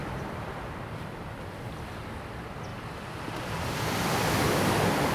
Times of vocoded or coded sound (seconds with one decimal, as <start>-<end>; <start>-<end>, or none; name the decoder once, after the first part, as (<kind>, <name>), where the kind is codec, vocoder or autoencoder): 0.0-1.9 (vocoder, BigVGAN v2); 2.7-5.1